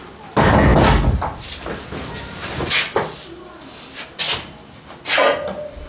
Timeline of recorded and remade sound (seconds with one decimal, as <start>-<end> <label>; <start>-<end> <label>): 0.0-5.9 recorded